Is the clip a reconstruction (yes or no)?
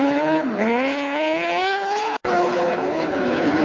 yes